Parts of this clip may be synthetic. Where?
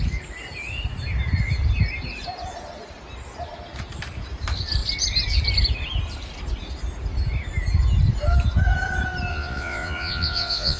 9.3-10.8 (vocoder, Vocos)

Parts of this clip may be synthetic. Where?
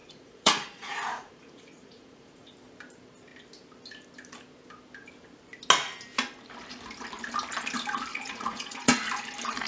0.0-2.5 (vocoder, Vocos); 8.1-9.0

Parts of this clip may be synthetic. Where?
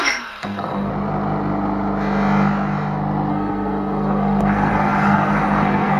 0.0-0.9 (codec, SNAC); 3.3-6.0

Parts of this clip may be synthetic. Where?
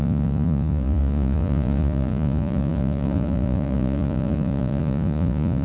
0.0-5.6 (vocoder, Vocos)